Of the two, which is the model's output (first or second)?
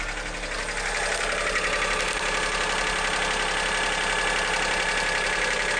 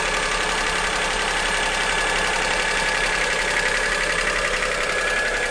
second